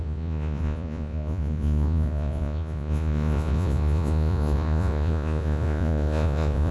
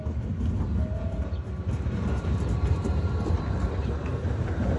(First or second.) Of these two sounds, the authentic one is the second